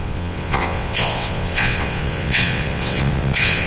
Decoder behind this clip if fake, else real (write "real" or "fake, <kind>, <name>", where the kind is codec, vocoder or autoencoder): fake, vocoder, WaveNeXt